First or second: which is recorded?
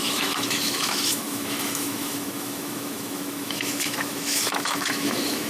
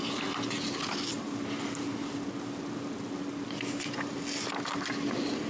second